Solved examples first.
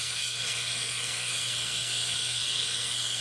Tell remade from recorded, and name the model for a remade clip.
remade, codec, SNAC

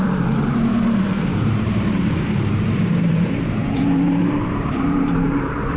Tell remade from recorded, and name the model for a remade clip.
remade, vocoder, BigVGAN v2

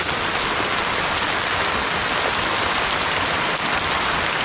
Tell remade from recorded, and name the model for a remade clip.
recorded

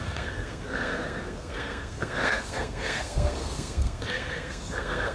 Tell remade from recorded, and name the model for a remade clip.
remade, codec, SNAC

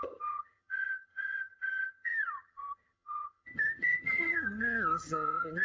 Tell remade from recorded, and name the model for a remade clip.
remade, vocoder, HiFi-GAN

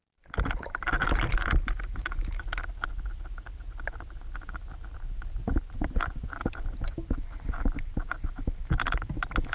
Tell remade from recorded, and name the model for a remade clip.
recorded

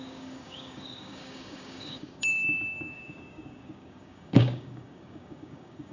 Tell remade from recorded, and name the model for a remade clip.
remade, codec, DAC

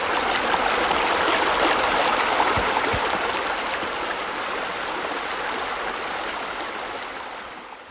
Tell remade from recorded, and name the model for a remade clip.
recorded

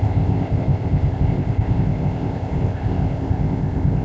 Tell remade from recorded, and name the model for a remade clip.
remade, codec, ZipCodec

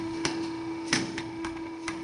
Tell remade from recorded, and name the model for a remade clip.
remade, autoencoder, DAC-VAE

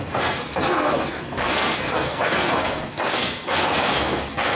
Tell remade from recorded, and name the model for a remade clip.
remade, codec, SNAC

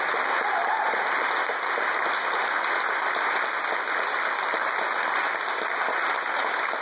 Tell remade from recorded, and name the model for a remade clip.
recorded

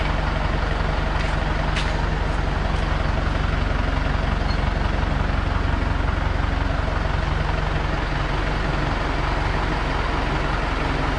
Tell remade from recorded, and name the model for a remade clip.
recorded